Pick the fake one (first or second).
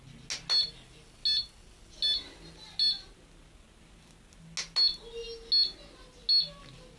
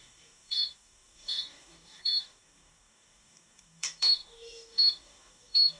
second